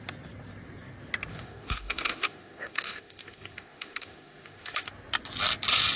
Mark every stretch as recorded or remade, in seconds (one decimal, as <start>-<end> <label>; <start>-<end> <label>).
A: 0.0-1.3 recorded; 1.3-4.9 remade; 4.9-6.0 recorded